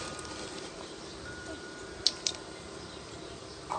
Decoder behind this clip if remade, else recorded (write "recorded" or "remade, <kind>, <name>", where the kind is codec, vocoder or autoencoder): recorded